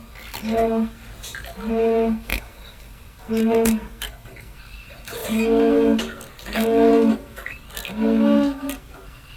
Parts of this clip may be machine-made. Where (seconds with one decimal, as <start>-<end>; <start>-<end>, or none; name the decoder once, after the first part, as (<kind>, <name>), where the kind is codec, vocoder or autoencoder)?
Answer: 0.0-1.1 (codec, SNAC); 1.7-9.4